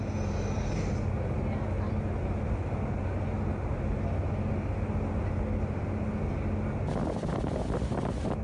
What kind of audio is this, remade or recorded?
recorded